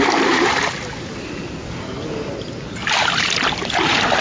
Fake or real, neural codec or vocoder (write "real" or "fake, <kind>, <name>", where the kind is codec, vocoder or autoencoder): real